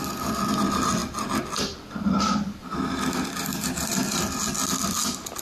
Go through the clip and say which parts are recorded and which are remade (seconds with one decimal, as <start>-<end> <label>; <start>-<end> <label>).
0.0-1.0 recorded; 1.0-4.2 remade; 4.2-5.4 recorded